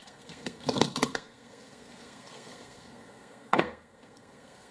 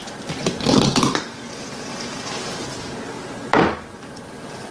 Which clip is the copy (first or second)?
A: first